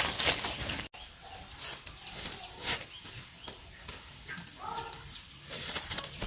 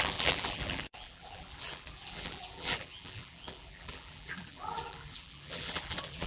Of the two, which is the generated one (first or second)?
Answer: second